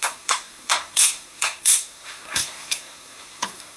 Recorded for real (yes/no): no